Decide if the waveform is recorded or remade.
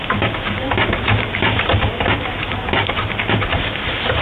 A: recorded